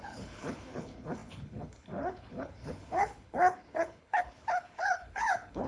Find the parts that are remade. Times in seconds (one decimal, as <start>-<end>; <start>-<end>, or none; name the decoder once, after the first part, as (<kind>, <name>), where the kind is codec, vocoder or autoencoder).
0.0-5.7 (codec, HILCodec)